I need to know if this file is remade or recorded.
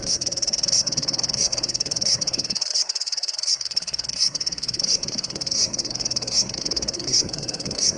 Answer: remade